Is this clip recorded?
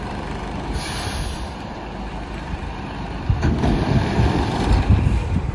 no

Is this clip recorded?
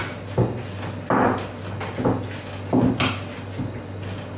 yes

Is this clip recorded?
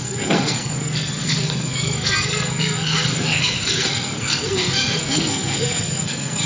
no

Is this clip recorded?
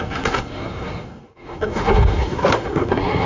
no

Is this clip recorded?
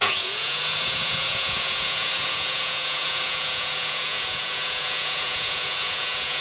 no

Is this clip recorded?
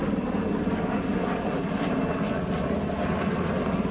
yes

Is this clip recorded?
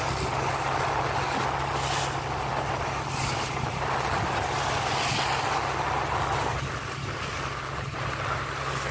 yes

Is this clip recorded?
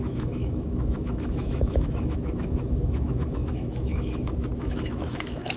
no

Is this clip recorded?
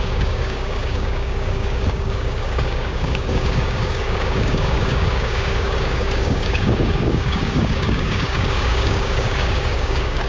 no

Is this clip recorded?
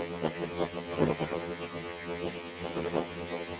no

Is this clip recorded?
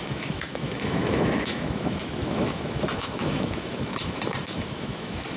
no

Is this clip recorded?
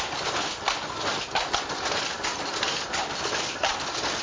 yes